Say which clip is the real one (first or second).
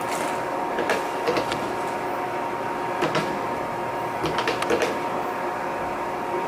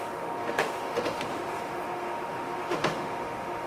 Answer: first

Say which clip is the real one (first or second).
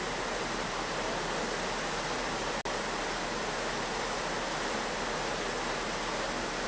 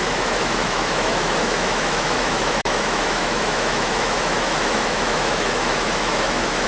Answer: first